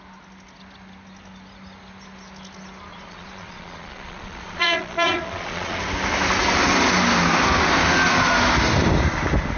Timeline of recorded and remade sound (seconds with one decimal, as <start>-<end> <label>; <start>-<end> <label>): 0.0-2.9 recorded; 2.9-5.8 remade; 5.8-9.6 recorded